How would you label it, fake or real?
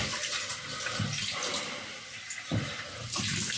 real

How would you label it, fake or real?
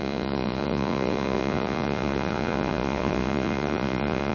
fake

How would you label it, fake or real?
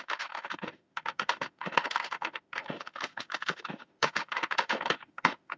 fake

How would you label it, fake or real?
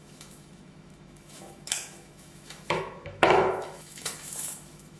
fake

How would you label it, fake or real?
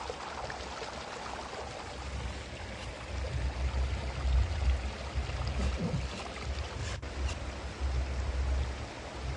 real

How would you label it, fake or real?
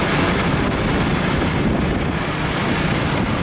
real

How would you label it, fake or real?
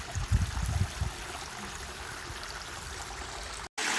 real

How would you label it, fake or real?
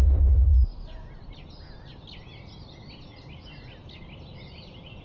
real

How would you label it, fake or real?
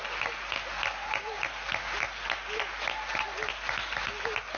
real